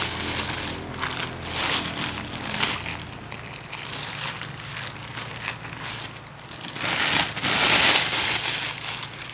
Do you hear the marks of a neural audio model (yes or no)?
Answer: no